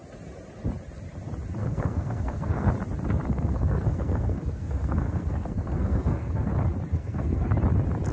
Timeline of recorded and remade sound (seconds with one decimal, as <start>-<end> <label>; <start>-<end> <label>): 0.0-1.6 recorded; 1.6-2.7 remade; 2.7-3.3 recorded; 3.3-6.5 remade; 6.5-6.9 recorded; 6.9-7.5 remade; 7.5-8.1 recorded